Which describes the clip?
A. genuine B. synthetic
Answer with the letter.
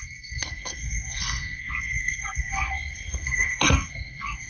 B